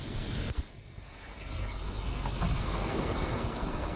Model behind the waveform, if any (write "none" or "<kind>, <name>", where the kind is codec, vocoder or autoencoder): codec, SNAC